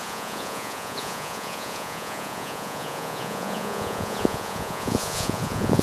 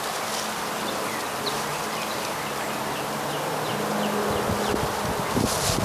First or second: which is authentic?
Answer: second